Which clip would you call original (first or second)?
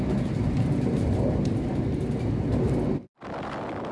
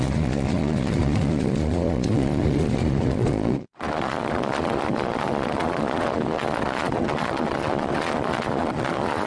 first